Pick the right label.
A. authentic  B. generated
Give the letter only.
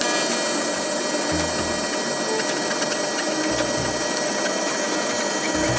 A